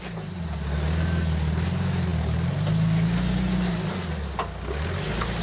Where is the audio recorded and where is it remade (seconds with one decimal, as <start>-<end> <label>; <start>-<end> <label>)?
0.0-5.4 recorded